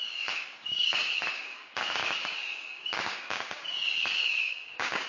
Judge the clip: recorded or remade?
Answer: remade